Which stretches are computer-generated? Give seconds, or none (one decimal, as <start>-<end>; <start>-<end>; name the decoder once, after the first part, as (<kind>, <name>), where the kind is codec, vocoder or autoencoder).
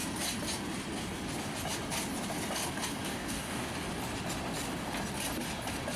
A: 3.1-3.7 (codec, DAC)